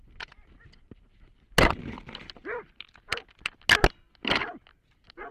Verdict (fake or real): real